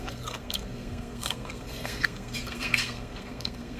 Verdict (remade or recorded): remade